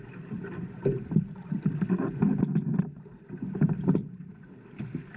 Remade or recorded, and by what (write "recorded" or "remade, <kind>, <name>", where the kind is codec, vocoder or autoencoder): recorded